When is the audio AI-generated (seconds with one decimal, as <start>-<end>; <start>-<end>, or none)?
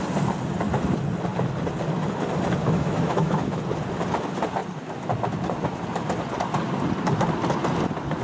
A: 2.6-3.6